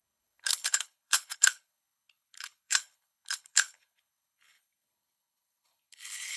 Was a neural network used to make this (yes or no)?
yes